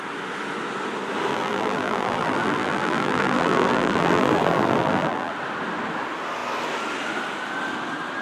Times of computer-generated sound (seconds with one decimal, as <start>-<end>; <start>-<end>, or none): 1.3-5.3